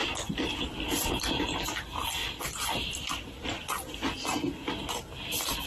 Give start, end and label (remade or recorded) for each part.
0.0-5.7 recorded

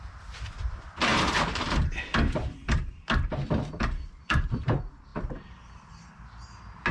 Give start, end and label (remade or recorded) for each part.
0.0-1.1 recorded; 1.1-3.0 remade; 3.0-6.9 recorded

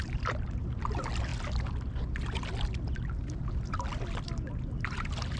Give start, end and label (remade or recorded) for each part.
0.0-5.4 recorded

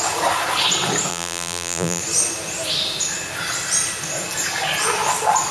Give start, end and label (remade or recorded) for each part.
0.0-1.1 recorded; 1.1-2.0 remade; 2.0-5.5 recorded

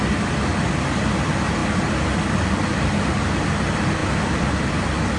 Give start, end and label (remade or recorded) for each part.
0.0-5.2 recorded